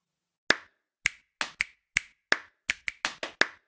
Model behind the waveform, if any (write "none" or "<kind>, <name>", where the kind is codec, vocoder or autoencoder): none